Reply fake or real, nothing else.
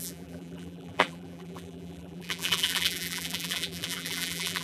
fake